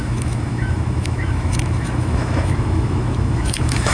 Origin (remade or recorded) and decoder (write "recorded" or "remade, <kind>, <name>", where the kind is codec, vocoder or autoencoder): remade, autoencoder, DAC-VAE